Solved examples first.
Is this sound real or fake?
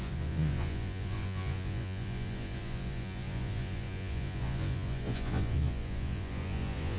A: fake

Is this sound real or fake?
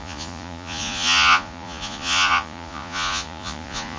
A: fake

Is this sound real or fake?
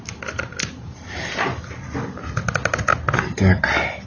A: real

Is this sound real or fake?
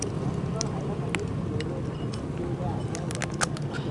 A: real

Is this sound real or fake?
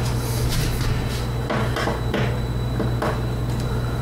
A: real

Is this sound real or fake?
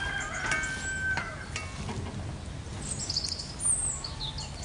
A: real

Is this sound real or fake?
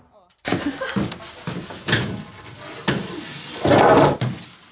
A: real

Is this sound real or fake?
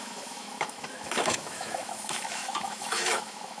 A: fake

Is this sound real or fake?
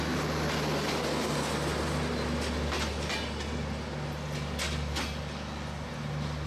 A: real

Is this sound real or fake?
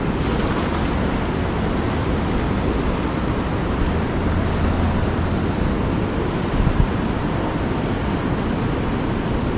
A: real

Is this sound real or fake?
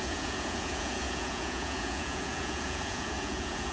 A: fake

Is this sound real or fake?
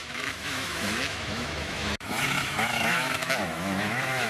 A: fake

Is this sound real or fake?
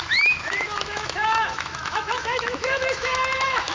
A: fake